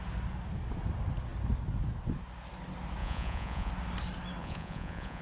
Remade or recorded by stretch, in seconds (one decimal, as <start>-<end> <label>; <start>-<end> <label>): 0.0-3.0 recorded; 3.0-3.7 remade; 3.7-4.4 recorded; 4.4-5.2 remade